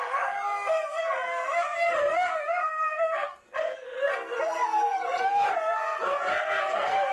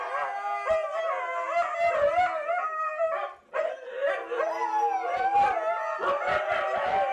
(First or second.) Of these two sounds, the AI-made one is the first